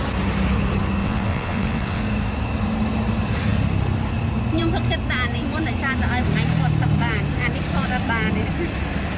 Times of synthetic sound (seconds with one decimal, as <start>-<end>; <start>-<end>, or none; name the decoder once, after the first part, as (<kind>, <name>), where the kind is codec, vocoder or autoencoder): 1.0-2.0 (vocoder, WaveNeXt)